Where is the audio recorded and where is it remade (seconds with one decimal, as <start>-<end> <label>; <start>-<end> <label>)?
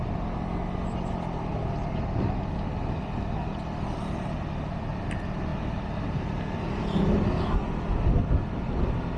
0.0-9.2 recorded